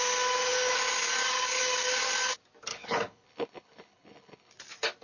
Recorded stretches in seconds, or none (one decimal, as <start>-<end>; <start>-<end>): 0.0-2.7; 4.5-5.0